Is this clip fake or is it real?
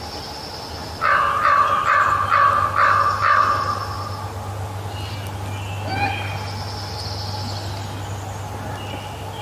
real